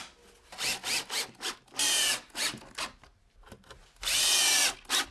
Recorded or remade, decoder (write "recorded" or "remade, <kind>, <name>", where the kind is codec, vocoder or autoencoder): recorded